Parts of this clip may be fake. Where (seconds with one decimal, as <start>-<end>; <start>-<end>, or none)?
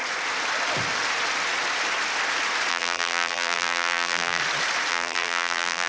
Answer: 2.7-4.4; 4.9-5.9